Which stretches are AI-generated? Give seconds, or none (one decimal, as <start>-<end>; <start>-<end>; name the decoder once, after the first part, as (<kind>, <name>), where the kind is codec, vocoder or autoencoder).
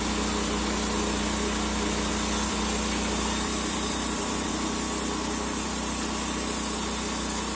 2.1-4.5 (vocoder, BigVGAN v2)